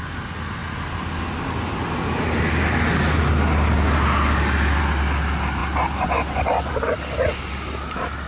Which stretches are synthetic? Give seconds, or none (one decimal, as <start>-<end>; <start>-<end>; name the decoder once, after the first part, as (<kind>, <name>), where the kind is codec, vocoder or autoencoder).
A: none